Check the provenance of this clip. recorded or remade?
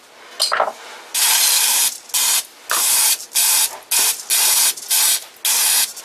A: recorded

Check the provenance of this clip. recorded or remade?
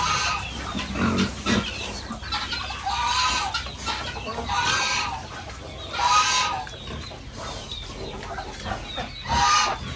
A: recorded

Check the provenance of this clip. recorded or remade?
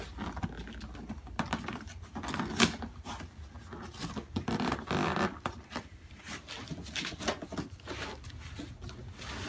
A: recorded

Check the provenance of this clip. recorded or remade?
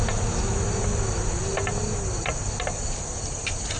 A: recorded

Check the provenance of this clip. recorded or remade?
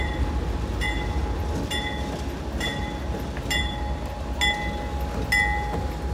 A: recorded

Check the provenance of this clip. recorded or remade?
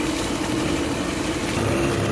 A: recorded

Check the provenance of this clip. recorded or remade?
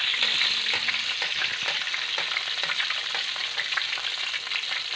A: recorded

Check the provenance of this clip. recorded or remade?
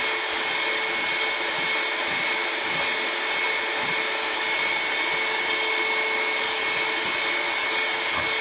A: recorded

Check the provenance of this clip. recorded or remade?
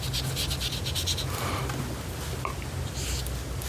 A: recorded